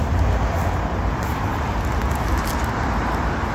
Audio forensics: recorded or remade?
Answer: recorded